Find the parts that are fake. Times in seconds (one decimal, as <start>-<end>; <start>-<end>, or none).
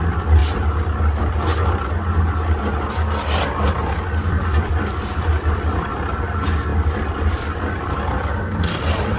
0.0-1.5; 4.3-9.2